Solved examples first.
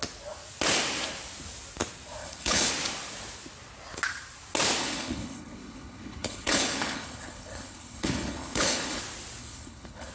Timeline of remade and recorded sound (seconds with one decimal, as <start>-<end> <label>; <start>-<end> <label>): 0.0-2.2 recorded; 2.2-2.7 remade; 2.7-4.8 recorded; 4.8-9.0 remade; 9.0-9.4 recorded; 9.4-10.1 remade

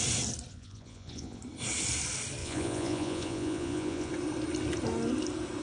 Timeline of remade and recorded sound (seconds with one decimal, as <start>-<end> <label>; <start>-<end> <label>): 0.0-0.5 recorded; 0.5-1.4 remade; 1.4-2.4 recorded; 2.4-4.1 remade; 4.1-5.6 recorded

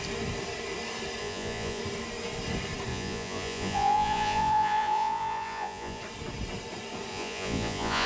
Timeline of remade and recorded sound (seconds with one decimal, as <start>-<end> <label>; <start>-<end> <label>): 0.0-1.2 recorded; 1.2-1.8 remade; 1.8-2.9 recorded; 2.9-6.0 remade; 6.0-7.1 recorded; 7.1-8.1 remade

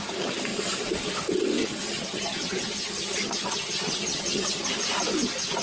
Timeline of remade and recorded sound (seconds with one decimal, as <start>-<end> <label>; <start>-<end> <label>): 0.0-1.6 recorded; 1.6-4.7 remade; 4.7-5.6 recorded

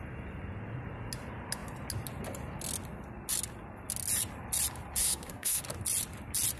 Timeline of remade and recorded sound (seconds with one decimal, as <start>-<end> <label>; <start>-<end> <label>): 0.0-5.0 recorded; 5.0-5.6 remade; 5.6-6.6 recorded